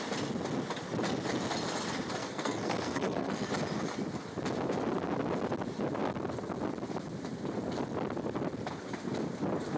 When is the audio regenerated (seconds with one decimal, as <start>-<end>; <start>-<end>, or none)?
2.2-3.5